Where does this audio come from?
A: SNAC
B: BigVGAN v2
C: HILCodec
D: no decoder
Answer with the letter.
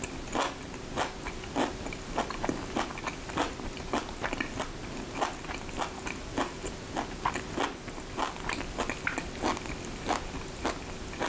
D